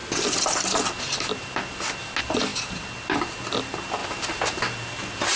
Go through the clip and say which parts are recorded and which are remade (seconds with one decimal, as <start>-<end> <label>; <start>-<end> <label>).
0.0-5.4 recorded